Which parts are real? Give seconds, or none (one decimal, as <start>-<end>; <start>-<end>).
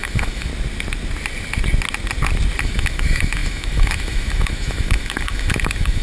0.5-2.6